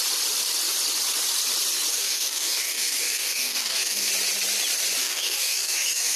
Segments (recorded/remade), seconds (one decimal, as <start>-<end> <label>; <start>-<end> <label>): 0.0-1.9 recorded; 1.9-4.1 remade; 4.1-5.0 recorded; 5.0-6.2 remade